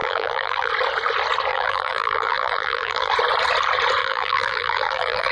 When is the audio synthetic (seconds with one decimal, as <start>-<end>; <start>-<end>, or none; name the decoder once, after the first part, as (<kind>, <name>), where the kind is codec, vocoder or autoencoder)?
0.0-0.7 (vocoder, BigVGAN v2); 1.5-3.1; 4.0-5.3